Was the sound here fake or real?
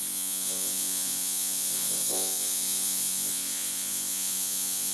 fake